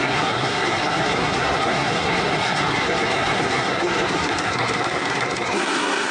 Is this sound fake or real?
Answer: fake